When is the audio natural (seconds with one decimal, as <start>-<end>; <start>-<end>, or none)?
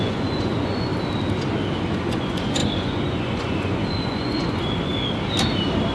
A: 0.9-1.9; 4.9-5.9